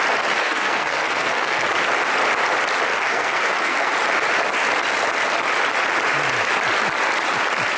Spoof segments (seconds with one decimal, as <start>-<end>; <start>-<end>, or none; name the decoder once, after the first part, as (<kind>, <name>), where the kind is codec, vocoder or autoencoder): 0.4-1.7 (codec, SNAC); 2.9-3.9